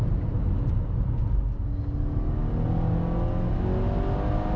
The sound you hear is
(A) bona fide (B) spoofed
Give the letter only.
A